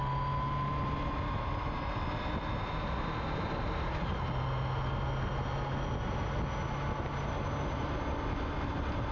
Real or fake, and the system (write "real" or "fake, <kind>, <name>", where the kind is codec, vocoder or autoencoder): real